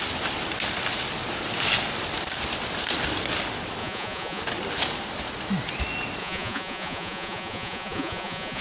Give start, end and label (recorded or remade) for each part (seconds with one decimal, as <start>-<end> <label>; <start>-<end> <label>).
0.0-3.8 recorded; 3.8-4.4 remade; 4.4-6.2 recorded; 6.2-8.6 remade